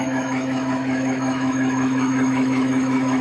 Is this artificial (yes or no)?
yes